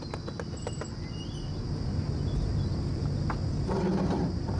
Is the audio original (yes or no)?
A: yes